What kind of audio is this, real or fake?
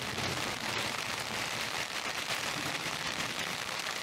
fake